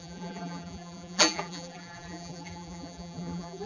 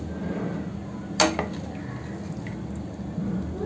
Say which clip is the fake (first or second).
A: first